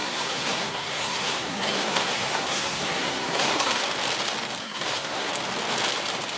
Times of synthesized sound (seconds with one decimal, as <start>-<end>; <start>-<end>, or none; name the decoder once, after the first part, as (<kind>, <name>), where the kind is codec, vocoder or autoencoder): 0.0-3.8 (codec, SNAC); 4.6-5.3